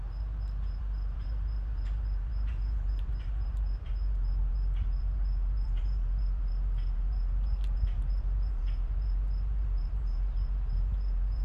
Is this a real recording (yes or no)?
no